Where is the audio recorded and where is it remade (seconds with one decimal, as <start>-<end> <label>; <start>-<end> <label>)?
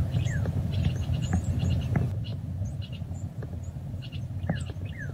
0.0-5.1 recorded